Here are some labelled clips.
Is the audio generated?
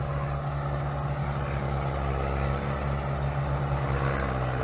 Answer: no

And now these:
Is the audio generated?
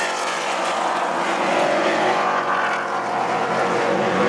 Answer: yes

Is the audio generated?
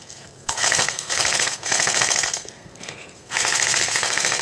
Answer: yes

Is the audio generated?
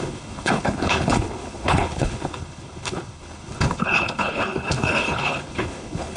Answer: yes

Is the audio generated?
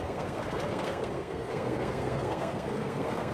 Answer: yes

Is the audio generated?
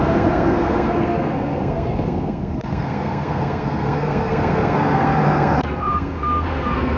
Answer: yes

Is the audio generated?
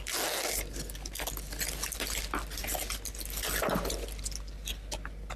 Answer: no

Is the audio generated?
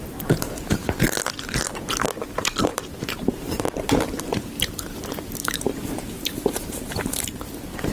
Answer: yes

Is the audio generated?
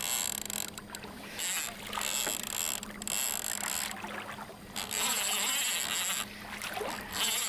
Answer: no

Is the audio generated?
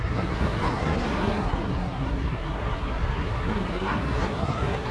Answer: yes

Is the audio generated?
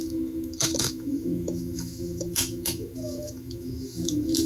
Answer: yes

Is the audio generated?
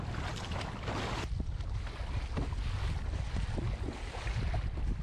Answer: no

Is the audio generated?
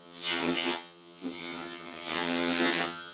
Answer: yes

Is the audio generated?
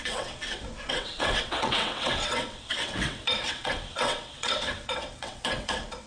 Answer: yes